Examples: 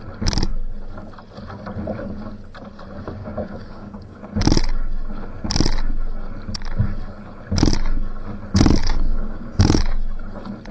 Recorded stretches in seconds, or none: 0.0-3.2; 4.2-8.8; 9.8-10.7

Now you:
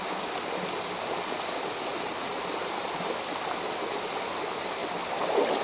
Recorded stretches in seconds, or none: 0.0-5.6

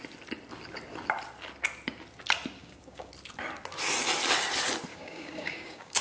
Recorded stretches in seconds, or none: 0.0-2.6; 3.1-4.9

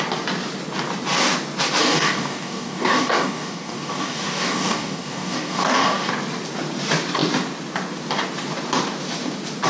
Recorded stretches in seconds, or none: 0.0-1.8; 6.1-9.7

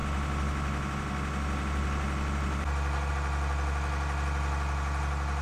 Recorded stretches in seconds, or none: 0.0-5.4